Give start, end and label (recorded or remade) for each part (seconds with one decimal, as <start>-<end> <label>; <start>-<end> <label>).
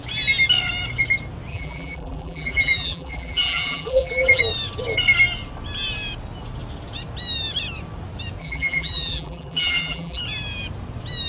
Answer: 0.0-1.5 recorded; 1.5-4.4 remade; 4.4-8.4 recorded; 8.4-10.2 remade; 10.2-11.3 recorded